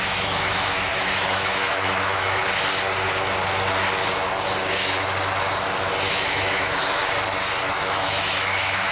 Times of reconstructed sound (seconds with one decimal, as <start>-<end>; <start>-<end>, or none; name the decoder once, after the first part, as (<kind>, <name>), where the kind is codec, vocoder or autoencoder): 0.0-2.4 (autoencoder, DAC-VAE); 6.1-7.0; 7.6-8.9